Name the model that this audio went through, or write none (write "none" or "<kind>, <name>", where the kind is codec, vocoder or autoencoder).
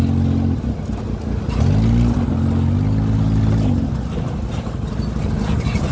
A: none